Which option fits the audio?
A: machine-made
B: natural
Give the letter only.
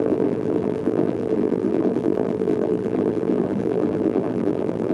A